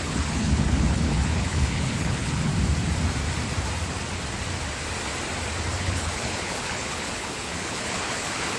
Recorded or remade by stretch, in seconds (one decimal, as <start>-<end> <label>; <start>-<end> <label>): 0.0-2.5 remade; 2.5-5.8 recorded; 5.8-8.6 remade